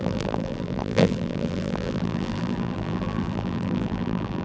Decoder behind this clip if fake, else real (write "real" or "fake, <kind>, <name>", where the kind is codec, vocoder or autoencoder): fake, vocoder, BigVGAN v2